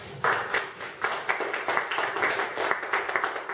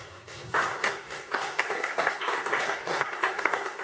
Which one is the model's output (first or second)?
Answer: second